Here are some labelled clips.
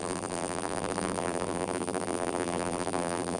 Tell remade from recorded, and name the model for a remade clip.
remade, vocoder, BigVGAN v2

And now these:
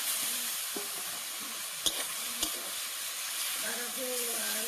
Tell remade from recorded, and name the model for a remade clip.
recorded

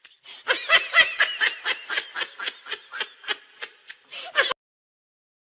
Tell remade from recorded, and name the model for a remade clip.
recorded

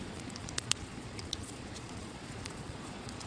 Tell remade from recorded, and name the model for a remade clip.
remade, vocoder, Vocos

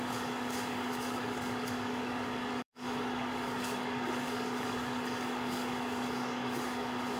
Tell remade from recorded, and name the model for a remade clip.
remade, codec, DAC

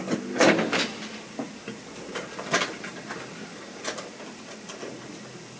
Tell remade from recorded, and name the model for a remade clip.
recorded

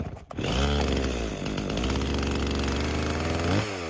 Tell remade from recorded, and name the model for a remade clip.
recorded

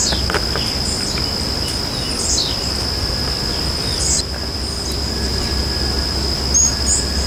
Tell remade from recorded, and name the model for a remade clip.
recorded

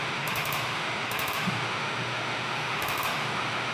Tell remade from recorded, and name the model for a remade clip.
remade, autoencoder, DAC-VAE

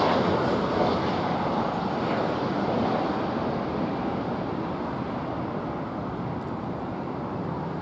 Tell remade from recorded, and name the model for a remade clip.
recorded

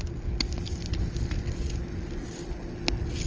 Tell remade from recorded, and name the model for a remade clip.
recorded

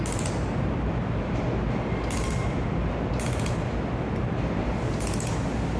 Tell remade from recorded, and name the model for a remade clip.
recorded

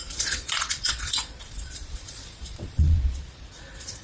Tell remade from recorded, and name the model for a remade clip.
remade, vocoder, Vocos